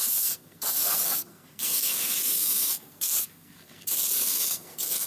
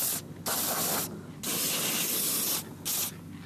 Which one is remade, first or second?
first